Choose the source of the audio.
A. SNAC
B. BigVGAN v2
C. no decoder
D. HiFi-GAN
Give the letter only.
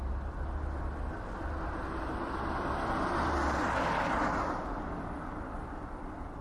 C